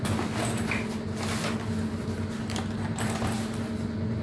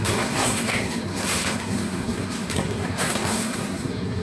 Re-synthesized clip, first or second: second